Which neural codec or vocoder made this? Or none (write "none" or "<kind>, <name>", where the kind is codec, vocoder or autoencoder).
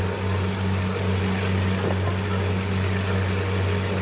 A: none